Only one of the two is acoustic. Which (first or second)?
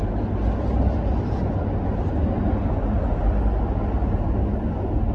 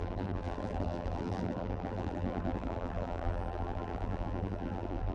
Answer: first